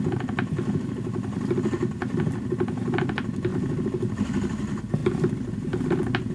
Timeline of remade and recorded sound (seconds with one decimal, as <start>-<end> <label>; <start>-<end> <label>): 0.0-6.3 recorded